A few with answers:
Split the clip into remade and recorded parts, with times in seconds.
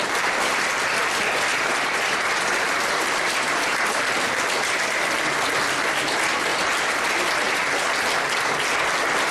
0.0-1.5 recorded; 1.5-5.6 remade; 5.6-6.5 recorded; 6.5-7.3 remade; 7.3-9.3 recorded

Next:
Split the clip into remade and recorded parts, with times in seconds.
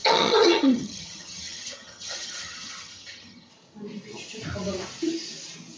0.0-3.5 remade; 3.5-5.8 recorded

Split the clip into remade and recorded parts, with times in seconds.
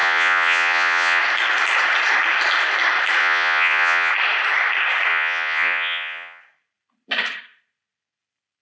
0.0-1.2 remade; 1.2-3.2 recorded; 3.2-4.1 remade; 4.1-5.1 recorded; 5.1-6.4 remade; 6.4-8.6 recorded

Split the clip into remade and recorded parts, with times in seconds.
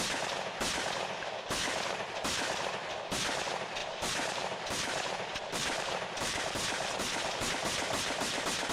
0.0-3.8 recorded; 3.8-7.5 remade; 7.5-8.7 recorded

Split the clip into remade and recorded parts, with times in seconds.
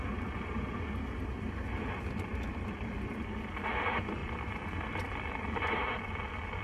0.0-4.2 recorded; 4.2-4.9 remade; 4.9-6.6 recorded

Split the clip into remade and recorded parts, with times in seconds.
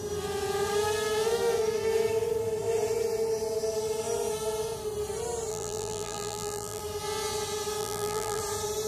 0.0-5.5 recorded; 5.5-6.8 remade; 6.8-7.8 recorded; 7.8-8.4 remade; 8.4-8.9 recorded